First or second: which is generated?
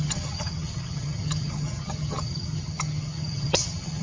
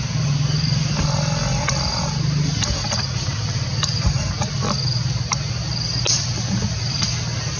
first